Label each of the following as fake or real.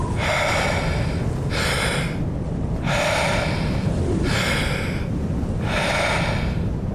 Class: real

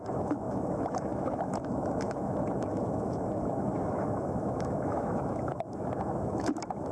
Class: fake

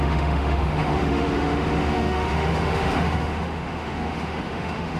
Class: fake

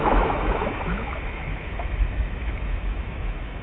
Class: fake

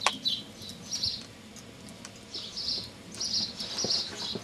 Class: real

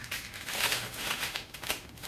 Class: fake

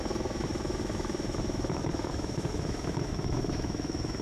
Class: fake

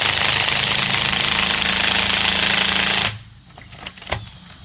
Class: real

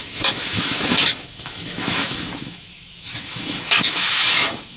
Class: fake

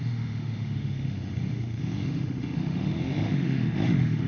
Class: fake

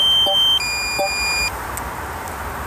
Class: real